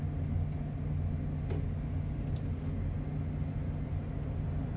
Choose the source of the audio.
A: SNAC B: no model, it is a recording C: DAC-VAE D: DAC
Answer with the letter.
B